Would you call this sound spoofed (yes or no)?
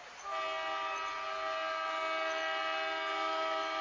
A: no